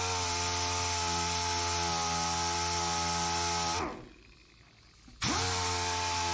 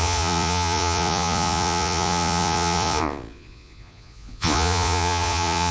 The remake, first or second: second